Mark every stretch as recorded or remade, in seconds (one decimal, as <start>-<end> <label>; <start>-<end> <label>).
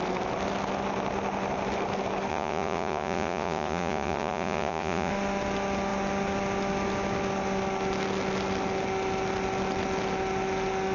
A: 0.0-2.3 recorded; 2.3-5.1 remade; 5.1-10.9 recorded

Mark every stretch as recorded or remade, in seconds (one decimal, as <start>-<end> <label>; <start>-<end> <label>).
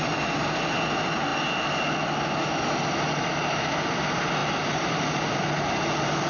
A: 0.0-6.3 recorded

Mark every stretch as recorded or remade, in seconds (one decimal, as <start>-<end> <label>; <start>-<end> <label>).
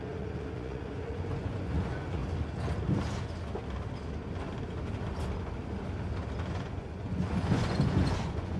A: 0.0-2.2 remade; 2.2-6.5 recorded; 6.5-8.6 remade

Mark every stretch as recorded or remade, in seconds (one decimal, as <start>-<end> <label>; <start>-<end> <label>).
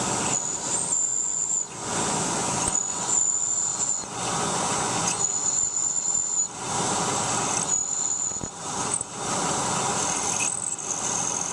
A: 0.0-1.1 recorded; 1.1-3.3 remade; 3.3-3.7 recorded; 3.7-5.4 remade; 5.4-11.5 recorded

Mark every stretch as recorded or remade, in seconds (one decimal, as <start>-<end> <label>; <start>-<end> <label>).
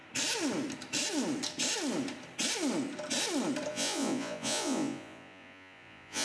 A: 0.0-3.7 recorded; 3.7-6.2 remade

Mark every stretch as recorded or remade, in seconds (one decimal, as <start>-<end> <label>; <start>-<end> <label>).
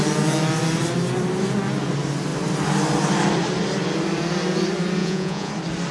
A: 0.0-5.0 recorded; 5.0-5.5 remade; 5.5-5.9 recorded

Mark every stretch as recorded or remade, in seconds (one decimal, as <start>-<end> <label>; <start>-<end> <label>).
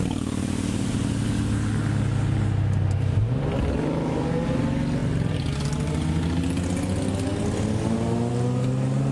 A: 0.0-9.1 recorded